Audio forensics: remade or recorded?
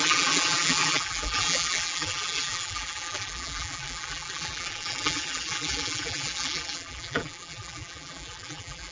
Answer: remade